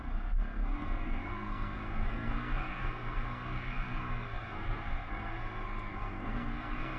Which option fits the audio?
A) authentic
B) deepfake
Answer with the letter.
B